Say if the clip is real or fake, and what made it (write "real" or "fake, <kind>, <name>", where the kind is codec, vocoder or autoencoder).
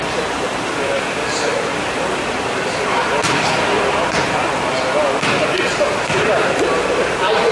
real